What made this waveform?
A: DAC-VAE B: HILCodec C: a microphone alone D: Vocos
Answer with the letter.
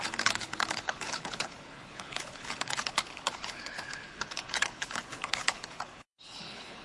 B